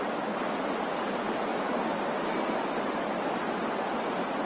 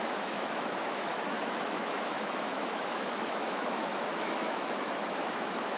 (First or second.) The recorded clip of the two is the first